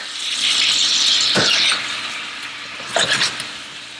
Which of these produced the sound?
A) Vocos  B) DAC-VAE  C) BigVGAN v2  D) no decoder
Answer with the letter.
D